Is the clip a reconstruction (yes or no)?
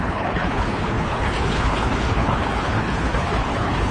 yes